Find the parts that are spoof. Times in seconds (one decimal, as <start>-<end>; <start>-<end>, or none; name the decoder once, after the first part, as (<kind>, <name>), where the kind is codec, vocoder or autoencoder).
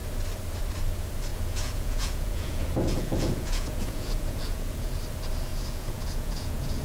1.3-4.9 (vocoder, Vocos); 5.5-6.8